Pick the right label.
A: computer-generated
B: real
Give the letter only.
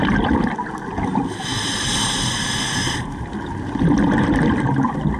B